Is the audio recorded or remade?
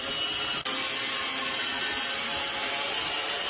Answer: recorded